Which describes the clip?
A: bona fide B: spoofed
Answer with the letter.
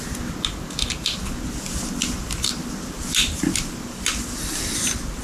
A